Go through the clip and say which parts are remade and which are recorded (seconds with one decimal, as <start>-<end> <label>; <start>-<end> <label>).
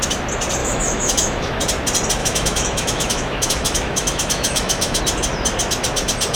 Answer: 0.0-0.6 recorded; 0.6-1.6 remade; 1.6-2.2 recorded; 2.2-5.0 remade; 5.0-6.4 recorded